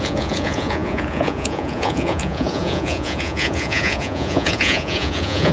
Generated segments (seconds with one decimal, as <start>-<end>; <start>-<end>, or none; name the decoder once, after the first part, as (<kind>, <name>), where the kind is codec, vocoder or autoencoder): 0.0-5.5 (vocoder, Vocos)